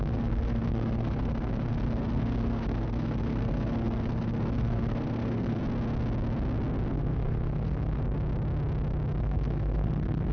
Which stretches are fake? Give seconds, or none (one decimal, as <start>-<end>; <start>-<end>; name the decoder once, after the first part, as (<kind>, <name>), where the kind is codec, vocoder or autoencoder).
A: 0.0-5.6 (codec, SNAC); 6.9-8.0; 9.2-10.3